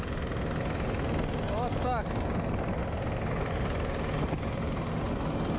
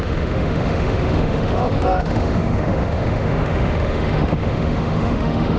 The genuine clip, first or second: first